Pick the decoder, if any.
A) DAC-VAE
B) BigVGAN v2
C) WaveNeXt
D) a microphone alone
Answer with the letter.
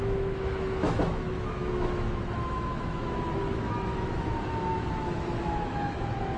A